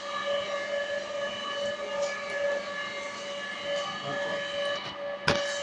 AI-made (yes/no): no